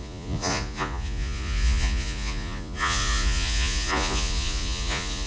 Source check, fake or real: fake